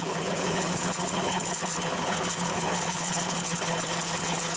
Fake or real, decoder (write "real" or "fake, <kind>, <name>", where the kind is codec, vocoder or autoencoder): fake, codec, HILCodec